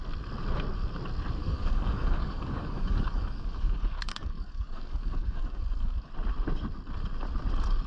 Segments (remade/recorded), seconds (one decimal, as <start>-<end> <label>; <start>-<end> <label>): 0.0-1.4 recorded; 1.4-6.1 remade; 6.1-7.9 recorded